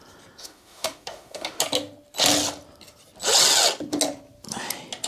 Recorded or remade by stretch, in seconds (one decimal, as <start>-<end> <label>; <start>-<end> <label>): 0.0-0.4 recorded; 0.4-1.6 remade; 1.6-5.1 recorded